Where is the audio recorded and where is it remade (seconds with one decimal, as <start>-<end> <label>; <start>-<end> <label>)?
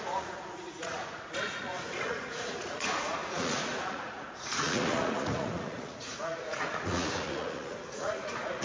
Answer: 0.0-8.6 remade